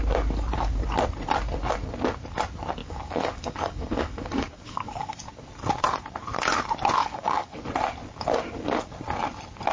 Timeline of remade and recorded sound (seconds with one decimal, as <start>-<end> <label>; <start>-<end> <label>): 0.0-2.8 recorded; 2.8-5.3 remade; 5.3-7.0 recorded; 7.0-7.6 remade; 7.6-9.7 recorded